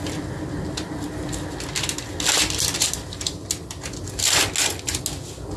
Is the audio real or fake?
real